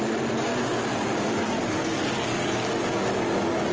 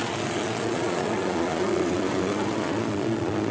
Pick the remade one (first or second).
second